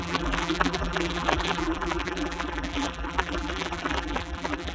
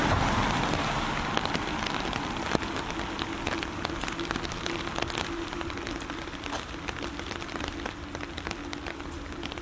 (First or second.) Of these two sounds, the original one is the second